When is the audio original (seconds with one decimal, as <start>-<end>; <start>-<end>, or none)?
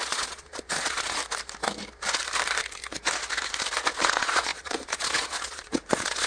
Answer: 1.2-4.0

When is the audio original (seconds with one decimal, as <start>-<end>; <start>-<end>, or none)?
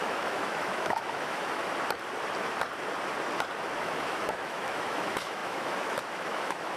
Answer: 1.6-3.8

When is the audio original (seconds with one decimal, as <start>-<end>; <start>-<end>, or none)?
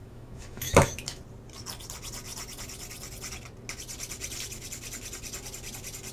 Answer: 1.2-6.1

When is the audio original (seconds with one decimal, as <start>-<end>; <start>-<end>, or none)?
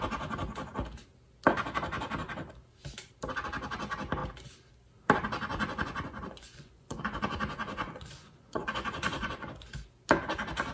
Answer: 0.0-5.5; 9.5-10.7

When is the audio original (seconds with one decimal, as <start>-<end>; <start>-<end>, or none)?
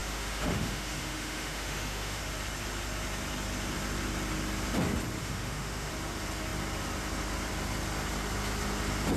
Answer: 2.2-5.2; 5.9-9.2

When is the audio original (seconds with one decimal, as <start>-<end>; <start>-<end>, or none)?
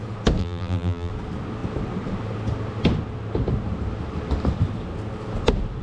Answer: 0.0-0.4; 1.1-5.8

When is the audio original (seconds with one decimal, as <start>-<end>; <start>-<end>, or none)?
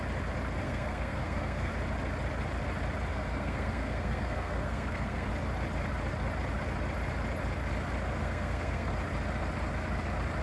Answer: 0.0-0.6; 1.7-3.1; 5.3-8.2; 8.9-10.4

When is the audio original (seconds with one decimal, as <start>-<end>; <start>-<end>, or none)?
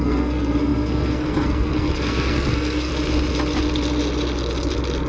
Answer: 2.9-5.1